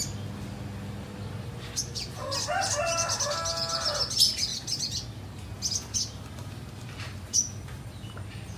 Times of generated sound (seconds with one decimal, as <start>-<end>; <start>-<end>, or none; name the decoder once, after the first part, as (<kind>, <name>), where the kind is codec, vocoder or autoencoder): none